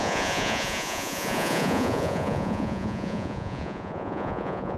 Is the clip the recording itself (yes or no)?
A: no